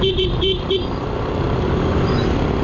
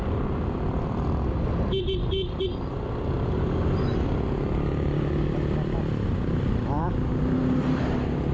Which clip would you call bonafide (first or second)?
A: second